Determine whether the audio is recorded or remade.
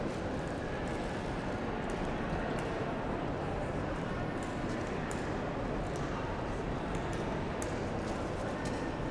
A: remade